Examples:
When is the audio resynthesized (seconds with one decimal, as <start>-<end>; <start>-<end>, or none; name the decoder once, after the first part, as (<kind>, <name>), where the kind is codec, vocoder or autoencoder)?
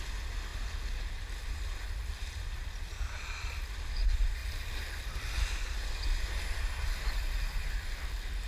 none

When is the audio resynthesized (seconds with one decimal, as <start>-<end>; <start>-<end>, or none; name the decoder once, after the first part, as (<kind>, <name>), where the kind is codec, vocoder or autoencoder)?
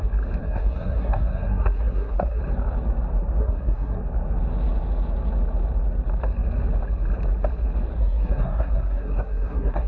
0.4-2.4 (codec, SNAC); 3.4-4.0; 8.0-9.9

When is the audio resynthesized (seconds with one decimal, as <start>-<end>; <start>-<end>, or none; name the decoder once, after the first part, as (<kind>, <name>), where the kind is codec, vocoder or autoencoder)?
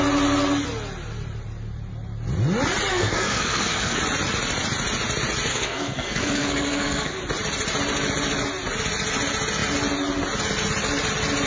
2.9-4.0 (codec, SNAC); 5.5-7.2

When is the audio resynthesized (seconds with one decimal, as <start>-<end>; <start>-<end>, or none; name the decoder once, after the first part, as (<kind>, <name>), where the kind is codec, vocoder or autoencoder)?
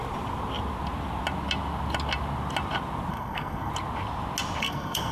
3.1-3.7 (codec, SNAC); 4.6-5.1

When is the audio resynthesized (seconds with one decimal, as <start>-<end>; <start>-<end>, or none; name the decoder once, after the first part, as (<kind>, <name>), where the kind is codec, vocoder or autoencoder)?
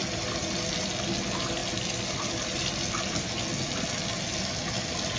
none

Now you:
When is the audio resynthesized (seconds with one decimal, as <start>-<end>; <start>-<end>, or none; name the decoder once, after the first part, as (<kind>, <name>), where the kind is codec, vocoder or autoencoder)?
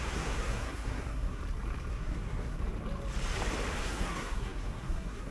0.0-1.4 (codec, SNAC); 1.9-2.6; 3.8-5.3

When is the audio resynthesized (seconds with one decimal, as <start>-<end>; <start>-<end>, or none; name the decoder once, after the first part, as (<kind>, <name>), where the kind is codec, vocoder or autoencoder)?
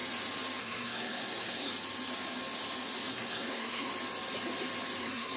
0.6-1.7 (codec, SNAC); 3.1-3.9; 5.0-5.4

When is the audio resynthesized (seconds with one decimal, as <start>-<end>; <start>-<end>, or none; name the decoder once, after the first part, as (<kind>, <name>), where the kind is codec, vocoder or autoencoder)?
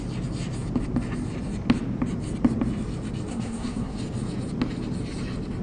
3.3-4.0 (codec, SNAC)